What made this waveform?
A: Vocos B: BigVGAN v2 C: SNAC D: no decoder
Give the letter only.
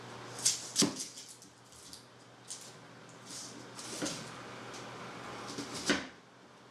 D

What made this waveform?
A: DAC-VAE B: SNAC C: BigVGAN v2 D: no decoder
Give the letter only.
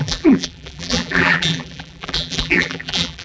C